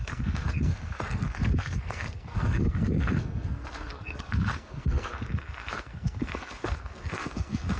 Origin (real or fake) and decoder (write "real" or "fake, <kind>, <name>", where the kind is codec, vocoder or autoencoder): fake, codec, SNAC